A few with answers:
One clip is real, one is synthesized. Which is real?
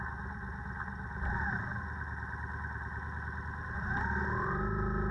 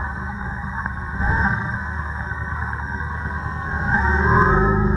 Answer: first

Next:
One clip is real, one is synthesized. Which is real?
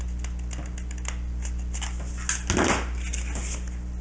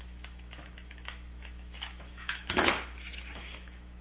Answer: first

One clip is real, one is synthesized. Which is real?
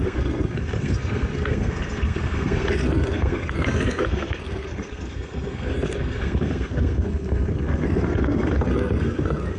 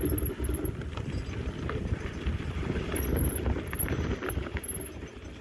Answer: second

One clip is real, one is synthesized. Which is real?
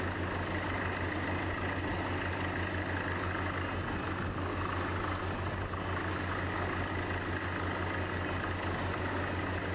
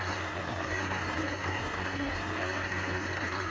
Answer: first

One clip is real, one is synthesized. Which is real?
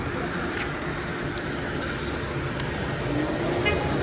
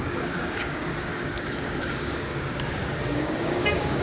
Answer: first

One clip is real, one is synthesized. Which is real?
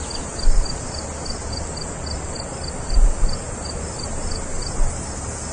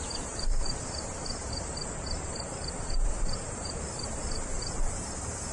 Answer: first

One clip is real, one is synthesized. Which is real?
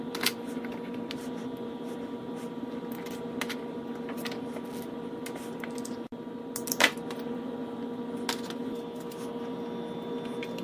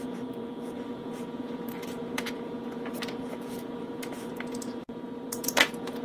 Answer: first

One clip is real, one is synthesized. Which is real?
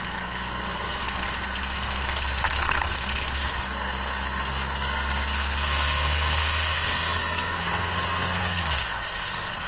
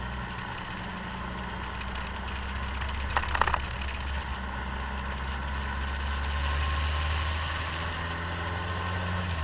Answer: second